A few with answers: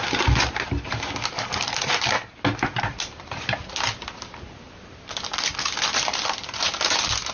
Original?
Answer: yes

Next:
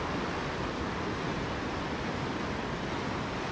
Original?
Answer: yes